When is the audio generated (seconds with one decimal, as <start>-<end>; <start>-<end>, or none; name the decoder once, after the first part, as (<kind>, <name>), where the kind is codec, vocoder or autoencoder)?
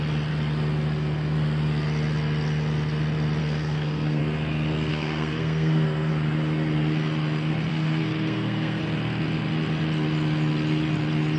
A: 3.4-4.2 (codec, SNAC); 4.9-6.1; 7.7-8.8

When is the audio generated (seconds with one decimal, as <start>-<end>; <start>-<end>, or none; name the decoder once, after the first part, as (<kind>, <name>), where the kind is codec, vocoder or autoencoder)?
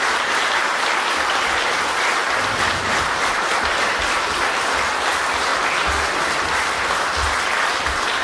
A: none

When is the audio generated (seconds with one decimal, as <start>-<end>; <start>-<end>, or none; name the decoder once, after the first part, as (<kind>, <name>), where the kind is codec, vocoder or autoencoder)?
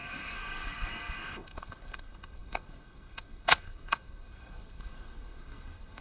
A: 0.0-6.0 (codec, SNAC)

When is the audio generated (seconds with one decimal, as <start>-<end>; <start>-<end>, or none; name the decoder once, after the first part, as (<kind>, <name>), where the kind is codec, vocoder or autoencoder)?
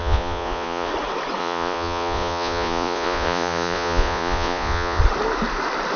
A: 0.0-0.9 (vocoder, Vocos); 1.4-5.0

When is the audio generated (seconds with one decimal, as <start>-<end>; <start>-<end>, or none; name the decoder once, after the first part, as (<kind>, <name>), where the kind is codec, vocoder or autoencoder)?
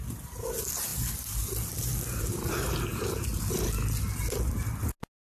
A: none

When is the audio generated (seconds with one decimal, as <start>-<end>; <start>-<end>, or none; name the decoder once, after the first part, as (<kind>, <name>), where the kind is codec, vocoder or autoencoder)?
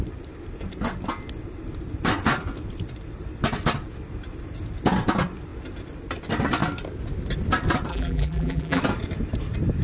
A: 7.9-8.8 (vocoder, BigVGAN v2)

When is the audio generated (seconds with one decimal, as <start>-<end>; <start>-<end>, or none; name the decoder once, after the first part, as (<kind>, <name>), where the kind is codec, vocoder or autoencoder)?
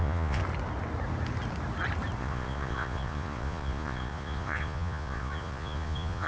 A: 0.0-0.4 (vocoder, Vocos); 2.2-6.3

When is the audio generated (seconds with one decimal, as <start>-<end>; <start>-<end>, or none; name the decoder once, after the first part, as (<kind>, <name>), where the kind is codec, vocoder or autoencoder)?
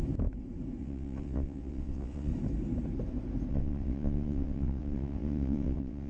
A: 0.8-2.3 (vocoder, WaveNeXt); 3.5-6.1